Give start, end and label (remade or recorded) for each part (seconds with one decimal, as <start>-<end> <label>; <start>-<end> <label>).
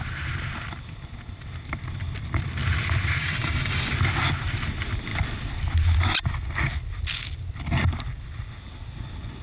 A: 0.0-3.2 recorded; 3.2-3.9 remade; 3.9-9.4 recorded